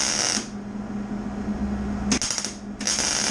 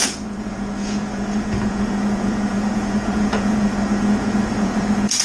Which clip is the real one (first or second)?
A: first